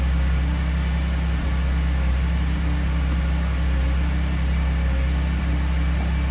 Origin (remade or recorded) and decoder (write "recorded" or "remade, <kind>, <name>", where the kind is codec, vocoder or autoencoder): recorded